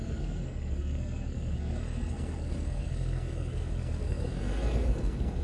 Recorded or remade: remade